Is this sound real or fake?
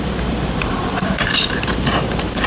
fake